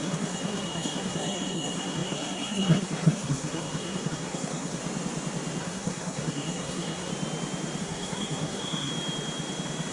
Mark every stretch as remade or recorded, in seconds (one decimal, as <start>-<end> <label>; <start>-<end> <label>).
0.0-4.8 remade; 4.8-5.6 recorded; 5.6-7.1 remade; 7.1-7.8 recorded; 7.8-8.9 remade; 8.9-9.9 recorded